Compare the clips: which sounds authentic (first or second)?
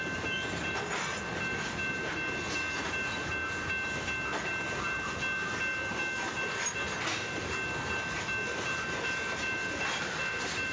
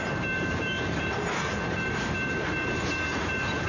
first